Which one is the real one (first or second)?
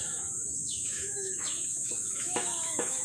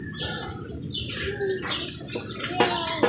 second